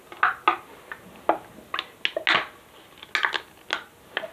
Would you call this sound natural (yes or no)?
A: yes